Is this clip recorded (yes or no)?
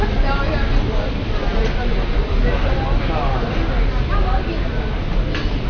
yes